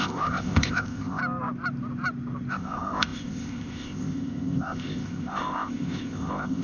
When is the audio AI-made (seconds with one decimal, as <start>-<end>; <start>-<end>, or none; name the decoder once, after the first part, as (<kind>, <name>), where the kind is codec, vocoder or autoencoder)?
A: 0.0-1.2 (codec, ZipCodec); 2.5-6.6